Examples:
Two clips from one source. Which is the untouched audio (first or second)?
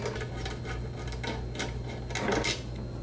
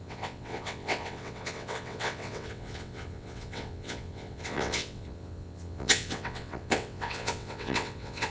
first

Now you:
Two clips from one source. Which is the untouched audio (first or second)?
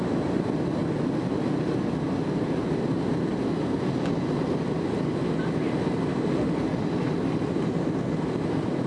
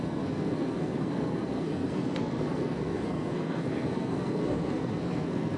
first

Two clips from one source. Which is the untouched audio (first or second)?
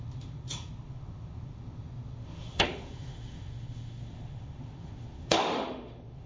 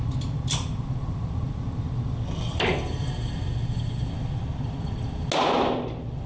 second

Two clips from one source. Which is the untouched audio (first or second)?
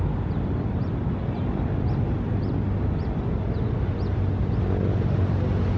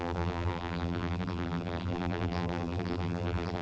first